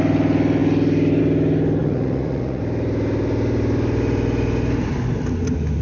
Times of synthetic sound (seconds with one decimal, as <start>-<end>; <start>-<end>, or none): 1.8-2.6